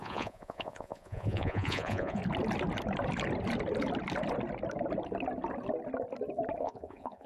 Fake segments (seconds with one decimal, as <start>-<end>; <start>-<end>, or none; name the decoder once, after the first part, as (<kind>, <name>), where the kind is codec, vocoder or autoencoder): 0.0-2.2 (vocoder, Vocos); 6.6-7.3